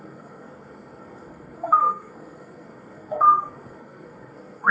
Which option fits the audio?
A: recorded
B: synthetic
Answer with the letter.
B